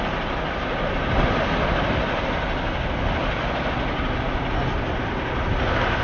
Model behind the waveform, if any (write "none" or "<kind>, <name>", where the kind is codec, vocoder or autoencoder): none